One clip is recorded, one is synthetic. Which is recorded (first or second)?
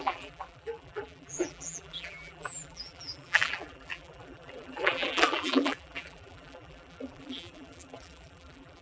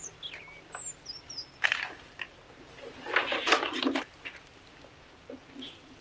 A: second